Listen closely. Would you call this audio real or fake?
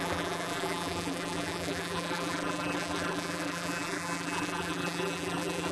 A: fake